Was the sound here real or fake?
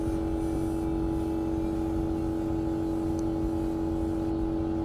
real